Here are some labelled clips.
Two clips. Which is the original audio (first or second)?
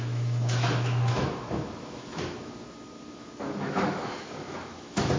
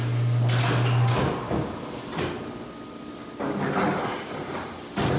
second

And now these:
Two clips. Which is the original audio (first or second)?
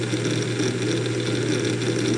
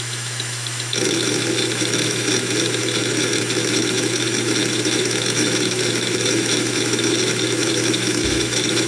first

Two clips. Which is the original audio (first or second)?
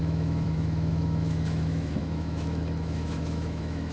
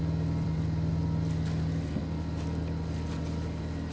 second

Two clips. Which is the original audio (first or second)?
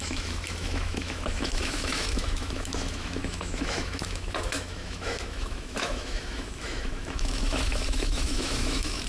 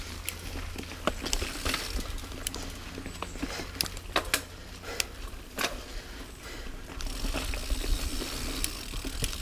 second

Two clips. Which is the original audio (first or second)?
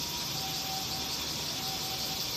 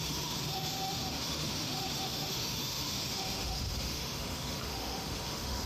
first